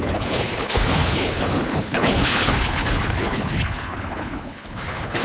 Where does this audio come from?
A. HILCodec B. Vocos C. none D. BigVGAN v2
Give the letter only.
A